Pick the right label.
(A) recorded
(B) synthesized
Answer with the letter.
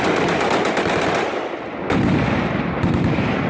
A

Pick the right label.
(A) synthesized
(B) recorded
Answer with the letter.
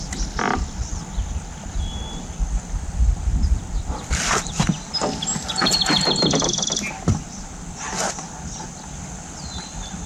A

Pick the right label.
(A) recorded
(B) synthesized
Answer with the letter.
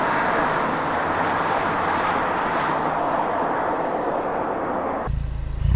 A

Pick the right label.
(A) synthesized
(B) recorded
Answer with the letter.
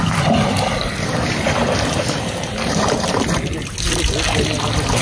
B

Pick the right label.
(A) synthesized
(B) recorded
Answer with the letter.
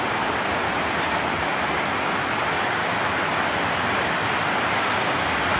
B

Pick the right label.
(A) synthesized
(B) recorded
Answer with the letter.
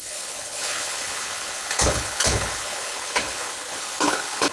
A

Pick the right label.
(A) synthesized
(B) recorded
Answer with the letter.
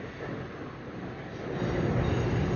B